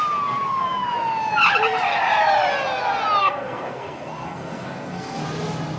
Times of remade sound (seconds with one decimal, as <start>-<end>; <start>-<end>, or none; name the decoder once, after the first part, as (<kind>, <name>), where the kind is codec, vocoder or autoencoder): 3.2-5.2 (codec, SNAC)